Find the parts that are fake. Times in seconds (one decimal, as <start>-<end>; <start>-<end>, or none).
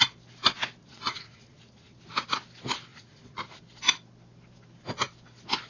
0.8-2.0; 2.9-3.6